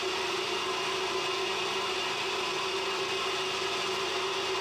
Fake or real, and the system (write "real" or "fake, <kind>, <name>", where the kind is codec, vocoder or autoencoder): real